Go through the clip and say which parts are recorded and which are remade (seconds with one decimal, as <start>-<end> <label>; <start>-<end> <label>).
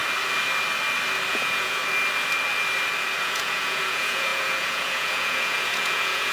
0.0-1.3 recorded; 1.3-1.8 remade; 1.8-3.2 recorded; 3.2-6.3 remade